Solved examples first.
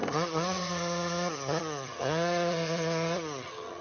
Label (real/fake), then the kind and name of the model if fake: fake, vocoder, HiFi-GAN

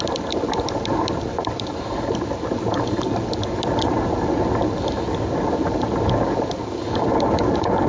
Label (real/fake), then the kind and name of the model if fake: real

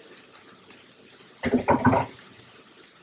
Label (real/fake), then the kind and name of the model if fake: real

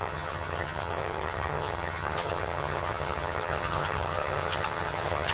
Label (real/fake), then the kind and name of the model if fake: fake, vocoder, HiFi-GAN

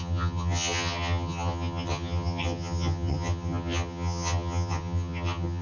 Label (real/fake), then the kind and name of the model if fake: fake, vocoder, HiFi-GAN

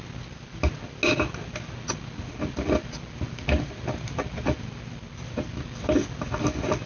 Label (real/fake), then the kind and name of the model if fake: real